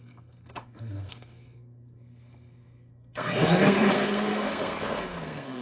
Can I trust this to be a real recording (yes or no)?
no